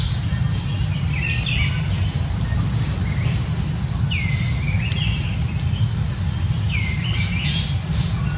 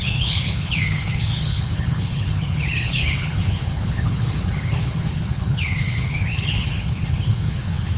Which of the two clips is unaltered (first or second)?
first